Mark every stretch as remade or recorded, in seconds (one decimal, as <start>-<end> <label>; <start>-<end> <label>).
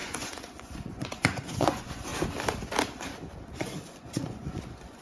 0.0-2.1 remade; 2.1-3.5 recorded; 3.5-5.0 remade